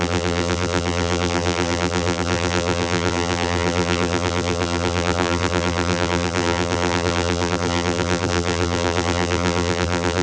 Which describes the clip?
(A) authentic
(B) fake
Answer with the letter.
B